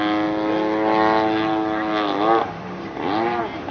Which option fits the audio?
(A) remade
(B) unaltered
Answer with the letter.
B